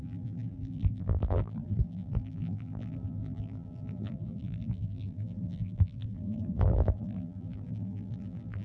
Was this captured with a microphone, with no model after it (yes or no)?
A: no